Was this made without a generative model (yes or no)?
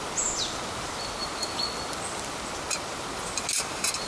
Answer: yes